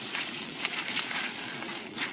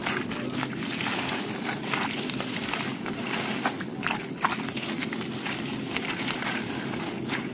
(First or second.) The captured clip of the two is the second